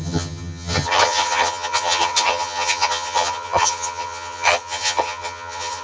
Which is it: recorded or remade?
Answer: remade